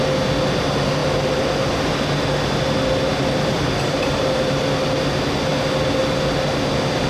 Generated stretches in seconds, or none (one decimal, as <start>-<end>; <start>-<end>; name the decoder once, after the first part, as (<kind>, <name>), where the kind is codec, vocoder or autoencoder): 1.0-1.9 (vocoder, BigVGAN v2); 3.1-4.6